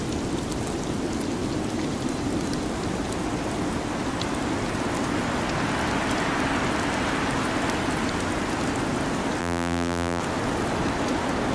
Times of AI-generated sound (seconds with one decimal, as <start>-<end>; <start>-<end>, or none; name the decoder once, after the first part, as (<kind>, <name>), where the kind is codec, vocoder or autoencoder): 9.4-10.2 (vocoder, BigVGAN v2)